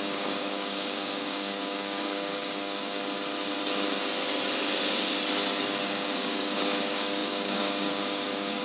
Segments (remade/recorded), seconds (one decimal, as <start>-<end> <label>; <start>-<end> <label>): 0.0-3.0 remade; 3.0-5.8 recorded; 5.8-8.6 remade